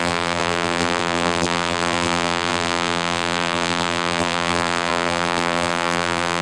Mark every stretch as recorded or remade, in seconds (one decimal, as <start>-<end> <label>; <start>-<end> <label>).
0.0-6.4 remade